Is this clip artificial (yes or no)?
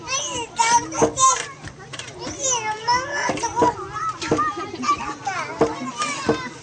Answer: no